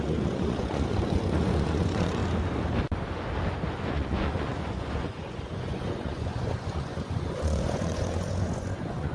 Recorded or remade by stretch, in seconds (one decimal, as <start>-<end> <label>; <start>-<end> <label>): 0.0-2.2 remade; 2.2-3.8 recorded; 3.8-9.1 remade